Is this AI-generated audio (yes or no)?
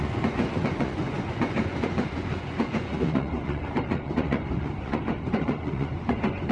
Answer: yes